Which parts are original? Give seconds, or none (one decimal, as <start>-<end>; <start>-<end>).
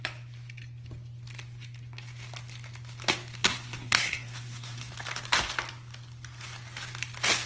0.0-3.5; 4.9-7.5